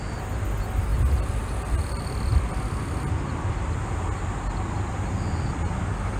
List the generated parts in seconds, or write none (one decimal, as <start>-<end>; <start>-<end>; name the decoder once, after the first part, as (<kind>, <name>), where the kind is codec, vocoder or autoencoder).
none